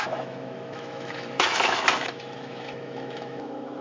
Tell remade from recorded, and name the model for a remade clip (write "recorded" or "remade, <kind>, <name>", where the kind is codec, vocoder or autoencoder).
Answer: remade, autoencoder, DAC-VAE